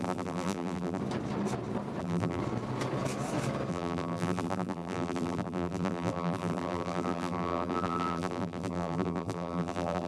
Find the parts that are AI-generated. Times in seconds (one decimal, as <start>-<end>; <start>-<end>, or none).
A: 0.0-1.0; 2.0-2.4; 3.7-10.1